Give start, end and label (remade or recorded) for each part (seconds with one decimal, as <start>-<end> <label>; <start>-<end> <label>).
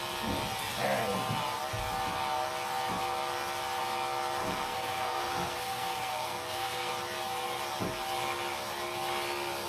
0.0-4.4 recorded; 4.4-6.9 remade; 6.9-9.7 recorded